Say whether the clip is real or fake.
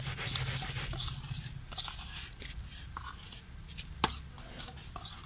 real